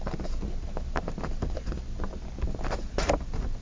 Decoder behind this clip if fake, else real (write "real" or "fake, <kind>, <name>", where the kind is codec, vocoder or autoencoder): real